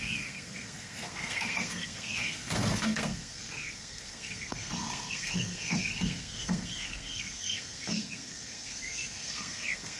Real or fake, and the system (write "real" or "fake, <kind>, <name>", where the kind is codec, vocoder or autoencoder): fake, codec, SNAC